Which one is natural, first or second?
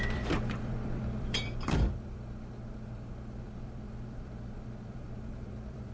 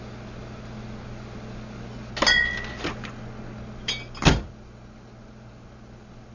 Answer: second